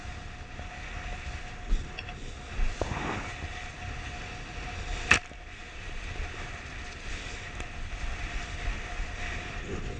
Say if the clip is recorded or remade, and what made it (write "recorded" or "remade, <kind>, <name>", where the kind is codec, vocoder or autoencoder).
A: recorded